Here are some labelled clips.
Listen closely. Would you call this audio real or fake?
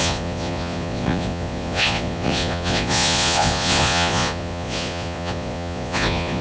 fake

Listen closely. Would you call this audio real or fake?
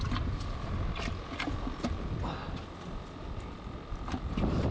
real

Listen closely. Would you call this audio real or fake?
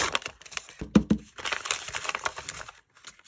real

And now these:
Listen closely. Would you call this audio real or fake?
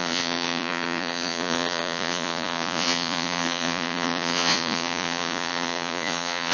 fake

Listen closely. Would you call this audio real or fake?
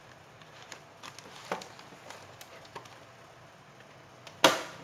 real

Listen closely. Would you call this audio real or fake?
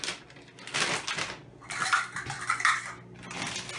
real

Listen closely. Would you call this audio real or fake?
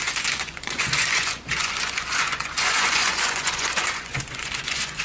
fake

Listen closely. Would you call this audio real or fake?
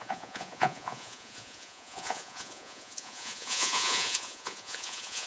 fake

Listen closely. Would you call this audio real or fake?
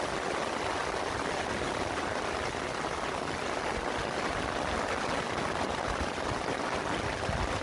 real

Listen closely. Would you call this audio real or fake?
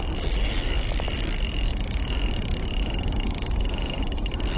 real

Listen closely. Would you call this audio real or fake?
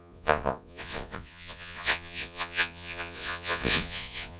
fake